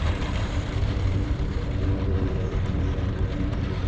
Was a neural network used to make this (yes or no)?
yes